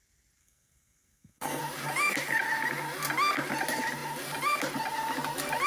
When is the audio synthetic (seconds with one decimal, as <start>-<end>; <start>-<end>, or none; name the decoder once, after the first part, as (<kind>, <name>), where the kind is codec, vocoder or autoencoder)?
0.4-1.6 (codec, SNAC)